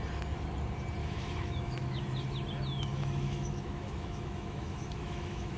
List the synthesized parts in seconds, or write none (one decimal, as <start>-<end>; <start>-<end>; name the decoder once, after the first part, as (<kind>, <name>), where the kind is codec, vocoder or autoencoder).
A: 1.0-2.0 (autoencoder, DAC-VAE); 2.9-5.6